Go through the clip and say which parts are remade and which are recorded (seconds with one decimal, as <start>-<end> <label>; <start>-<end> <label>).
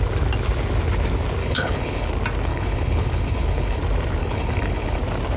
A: 0.0-1.4 recorded; 1.4-2.1 remade; 2.1-2.5 recorded; 2.5-3.8 remade; 3.8-4.2 recorded; 4.2-5.0 remade; 5.0-5.4 recorded